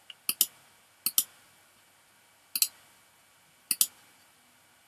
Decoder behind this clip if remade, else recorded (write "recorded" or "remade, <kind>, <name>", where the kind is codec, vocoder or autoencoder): recorded